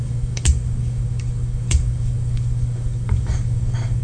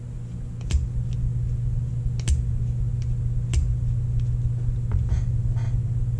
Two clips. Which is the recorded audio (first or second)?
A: second